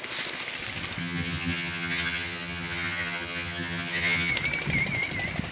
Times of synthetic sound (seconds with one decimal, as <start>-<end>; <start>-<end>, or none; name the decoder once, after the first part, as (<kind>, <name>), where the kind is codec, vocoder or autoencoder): 1.0-4.3 (vocoder, HiFi-GAN)